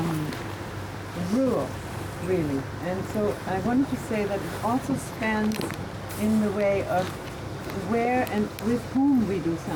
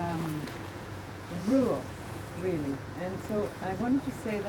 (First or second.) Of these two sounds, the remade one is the second